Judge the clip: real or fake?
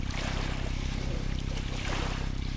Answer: fake